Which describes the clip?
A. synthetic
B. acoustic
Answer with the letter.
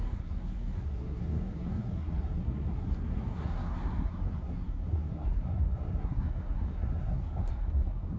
A